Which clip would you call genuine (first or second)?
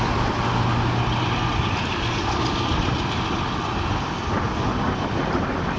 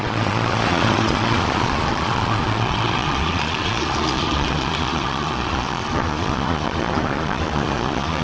first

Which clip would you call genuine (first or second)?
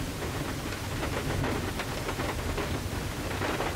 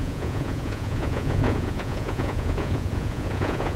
first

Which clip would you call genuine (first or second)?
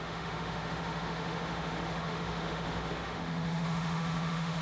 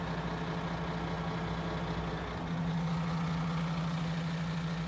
second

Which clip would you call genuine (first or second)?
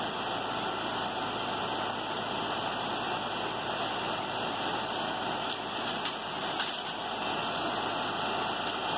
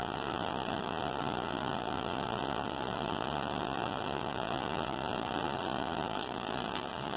first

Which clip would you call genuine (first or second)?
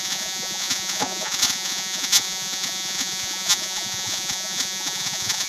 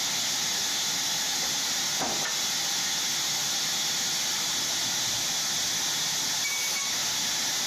second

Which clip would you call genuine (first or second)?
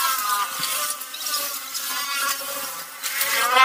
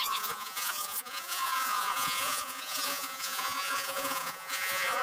first